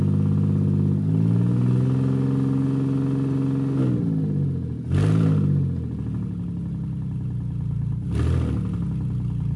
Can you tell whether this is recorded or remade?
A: recorded